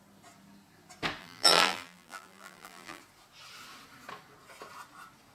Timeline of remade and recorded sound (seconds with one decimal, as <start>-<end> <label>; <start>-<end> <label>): 0.0-1.2 recorded; 1.2-3.0 remade; 3.0-5.3 recorded